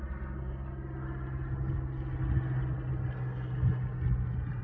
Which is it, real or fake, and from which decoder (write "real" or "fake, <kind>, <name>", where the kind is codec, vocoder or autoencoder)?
real